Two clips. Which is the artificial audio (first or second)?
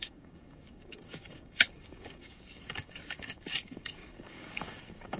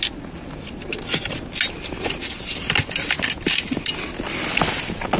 first